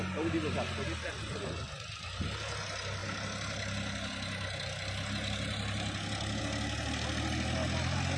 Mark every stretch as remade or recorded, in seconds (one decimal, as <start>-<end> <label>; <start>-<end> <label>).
0.0-8.2 recorded

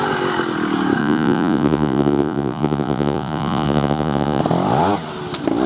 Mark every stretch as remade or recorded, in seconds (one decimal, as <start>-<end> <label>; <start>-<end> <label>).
0.0-1.0 recorded; 1.0-4.4 remade; 4.4-5.7 recorded

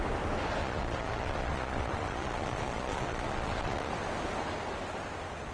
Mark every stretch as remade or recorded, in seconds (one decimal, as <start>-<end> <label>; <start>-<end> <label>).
0.0-0.6 recorded; 0.6-3.9 remade; 3.9-5.5 recorded

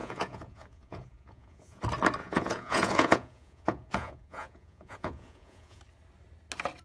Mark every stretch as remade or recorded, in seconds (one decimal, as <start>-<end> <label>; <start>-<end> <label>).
0.0-1.8 remade; 1.8-2.2 recorded; 2.2-5.8 remade; 5.8-6.8 recorded

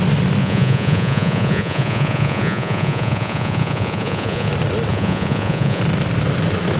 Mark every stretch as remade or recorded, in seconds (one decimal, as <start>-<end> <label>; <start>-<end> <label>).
0.0-0.4 recorded; 0.4-4.5 remade; 4.5-4.9 recorded; 4.9-5.8 remade; 5.8-6.8 recorded

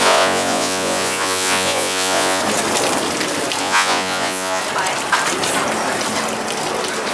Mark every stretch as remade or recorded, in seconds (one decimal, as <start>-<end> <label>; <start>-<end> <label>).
0.0-2.4 remade; 2.4-3.6 recorded; 3.6-4.6 remade; 4.6-7.1 recorded